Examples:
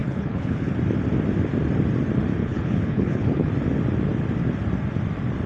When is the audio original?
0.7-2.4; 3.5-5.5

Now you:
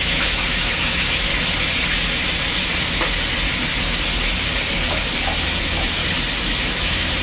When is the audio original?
1.3-5.6; 6.0-6.8

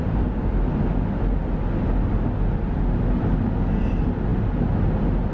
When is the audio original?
0.0-5.3

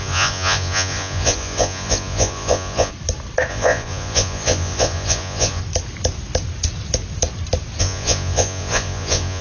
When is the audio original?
2.9-3.5; 5.6-7.8

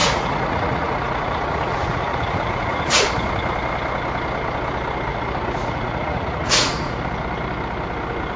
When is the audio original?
3.0-5.1; 7.0-8.4